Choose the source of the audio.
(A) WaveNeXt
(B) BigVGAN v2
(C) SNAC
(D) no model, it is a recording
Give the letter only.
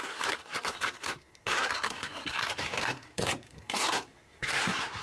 C